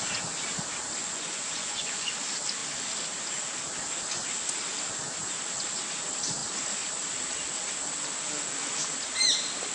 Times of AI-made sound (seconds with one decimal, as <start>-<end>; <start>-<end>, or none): 1.0-2.1